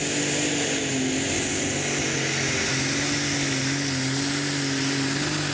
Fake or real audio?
real